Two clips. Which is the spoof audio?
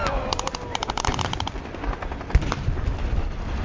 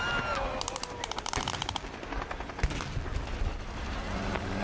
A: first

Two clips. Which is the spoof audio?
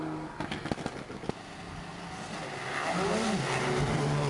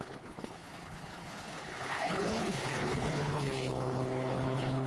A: second